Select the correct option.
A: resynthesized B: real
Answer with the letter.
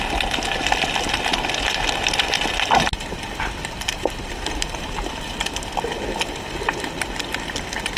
B